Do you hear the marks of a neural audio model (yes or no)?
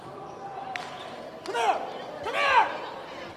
no